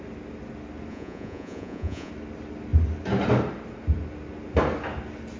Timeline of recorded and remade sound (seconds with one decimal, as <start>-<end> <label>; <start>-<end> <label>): 0.0-0.9 recorded; 0.9-2.1 remade; 2.1-5.4 recorded